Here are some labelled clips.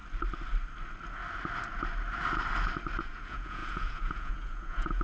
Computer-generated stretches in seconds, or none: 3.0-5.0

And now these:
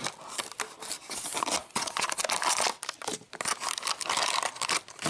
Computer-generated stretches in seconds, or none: 1.6-2.1

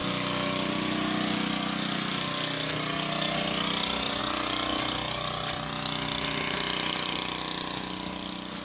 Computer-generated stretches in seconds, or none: none

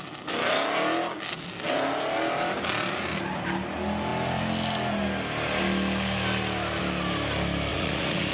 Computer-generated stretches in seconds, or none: 7.7-8.3

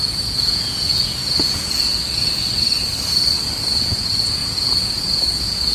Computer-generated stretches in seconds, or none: 0.0-1.9; 3.8-5.7